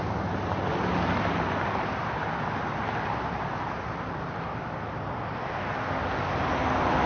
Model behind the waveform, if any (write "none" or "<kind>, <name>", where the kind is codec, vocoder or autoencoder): none